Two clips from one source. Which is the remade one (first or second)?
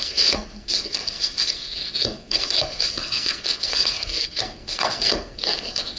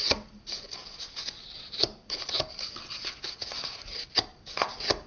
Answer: first